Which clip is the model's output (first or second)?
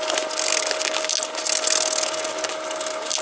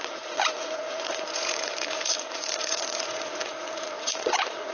second